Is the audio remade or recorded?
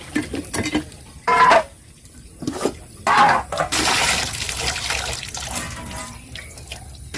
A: recorded